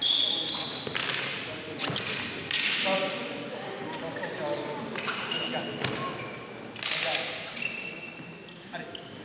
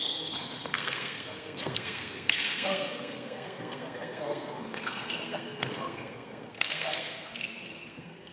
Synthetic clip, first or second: second